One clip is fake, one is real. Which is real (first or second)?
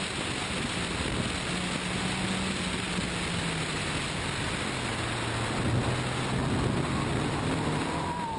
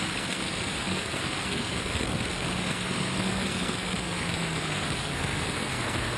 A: first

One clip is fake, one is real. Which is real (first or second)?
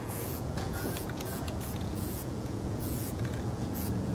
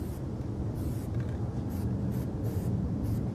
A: second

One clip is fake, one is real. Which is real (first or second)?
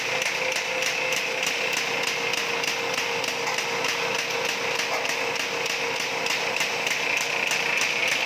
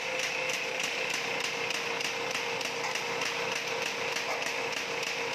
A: first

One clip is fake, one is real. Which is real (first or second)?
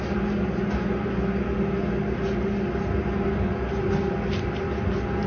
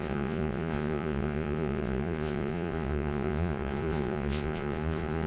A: first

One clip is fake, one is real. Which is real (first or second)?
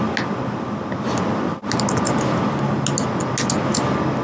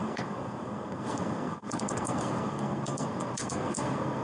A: first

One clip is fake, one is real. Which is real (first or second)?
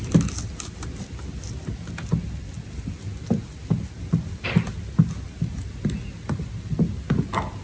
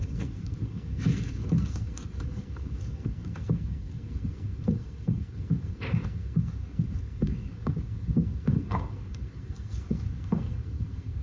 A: first